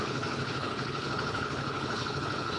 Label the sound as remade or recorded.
remade